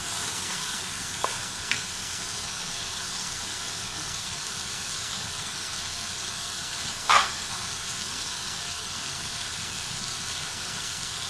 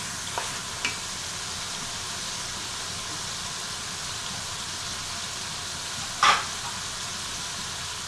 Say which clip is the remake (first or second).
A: first